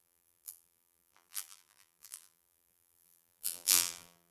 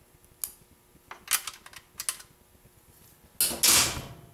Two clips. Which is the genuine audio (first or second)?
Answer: second